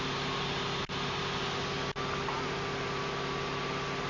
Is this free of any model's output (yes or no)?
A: yes